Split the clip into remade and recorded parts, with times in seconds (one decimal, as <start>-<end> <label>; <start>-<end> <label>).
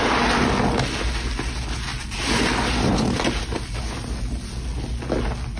0.0-5.6 recorded